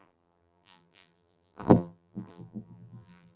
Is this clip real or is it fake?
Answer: fake